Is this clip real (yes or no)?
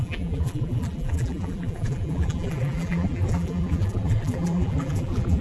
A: no